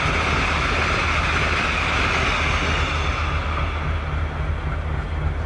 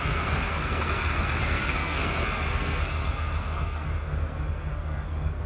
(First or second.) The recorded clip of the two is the first